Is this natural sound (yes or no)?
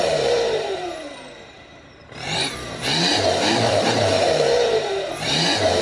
no